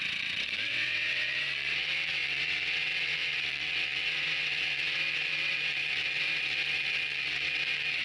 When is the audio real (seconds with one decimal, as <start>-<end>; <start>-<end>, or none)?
none